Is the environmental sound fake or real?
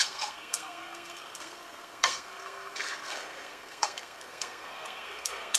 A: fake